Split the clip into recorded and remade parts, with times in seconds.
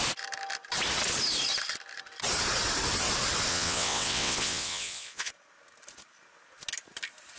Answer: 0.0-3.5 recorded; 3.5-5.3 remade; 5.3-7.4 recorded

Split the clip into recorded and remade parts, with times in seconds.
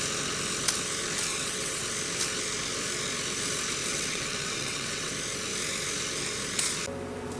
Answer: 0.0-1.3 recorded; 1.3-1.8 remade; 1.8-3.8 recorded; 3.8-5.1 remade; 5.1-7.4 recorded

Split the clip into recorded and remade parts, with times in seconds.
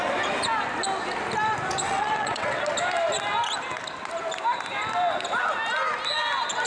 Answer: 0.0-1.8 recorded; 1.8-2.6 remade; 2.6-6.7 recorded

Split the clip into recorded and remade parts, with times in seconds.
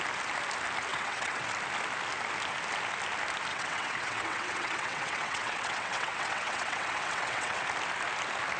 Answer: 0.0-0.9 recorded; 0.9-1.5 remade; 1.5-3.5 recorded; 3.5-7.6 remade; 7.6-8.6 recorded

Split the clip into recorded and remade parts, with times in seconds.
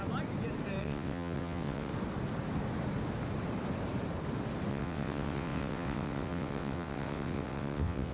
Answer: 0.0-0.8 recorded; 0.8-1.9 remade; 1.9-4.7 recorded; 4.7-8.1 remade